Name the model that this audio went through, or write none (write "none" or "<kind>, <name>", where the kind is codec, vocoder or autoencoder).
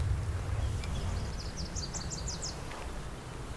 none